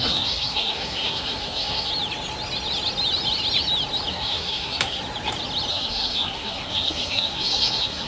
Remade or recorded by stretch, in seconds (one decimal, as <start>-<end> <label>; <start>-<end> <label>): 0.0-1.9 remade; 1.9-4.1 recorded; 4.1-5.0 remade; 5.0-5.7 recorded; 5.7-8.1 remade